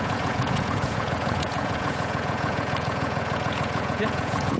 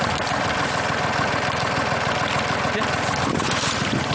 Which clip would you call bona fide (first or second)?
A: second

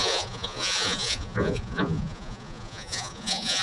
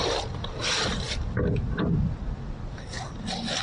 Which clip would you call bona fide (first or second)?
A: second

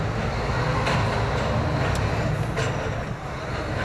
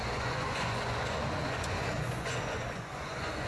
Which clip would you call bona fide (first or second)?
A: first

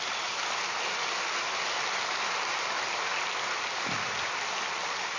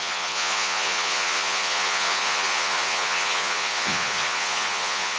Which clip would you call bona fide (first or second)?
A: first